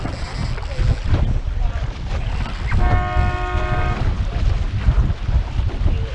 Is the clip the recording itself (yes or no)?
yes